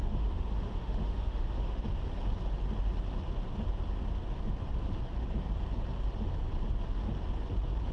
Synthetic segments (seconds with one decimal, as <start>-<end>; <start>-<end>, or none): 0.0-1.8